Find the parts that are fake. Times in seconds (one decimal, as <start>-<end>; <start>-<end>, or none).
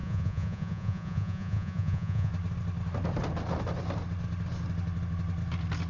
0.0-2.3